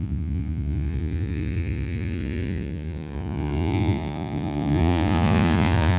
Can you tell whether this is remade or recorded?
remade